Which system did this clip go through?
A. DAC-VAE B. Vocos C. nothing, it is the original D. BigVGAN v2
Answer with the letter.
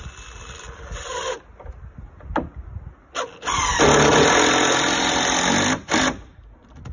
C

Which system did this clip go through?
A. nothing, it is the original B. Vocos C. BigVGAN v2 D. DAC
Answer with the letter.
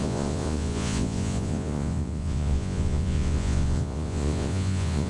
B